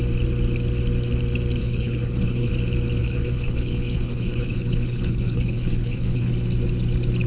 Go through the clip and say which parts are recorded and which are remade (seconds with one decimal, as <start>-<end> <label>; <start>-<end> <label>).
0.0-1.6 recorded; 1.6-2.5 remade; 2.5-3.0 recorded; 3.0-6.3 remade; 6.3-7.3 recorded